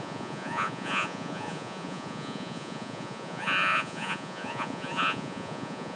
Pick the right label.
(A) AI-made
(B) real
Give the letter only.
A